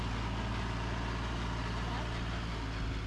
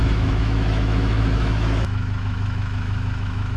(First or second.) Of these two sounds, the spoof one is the second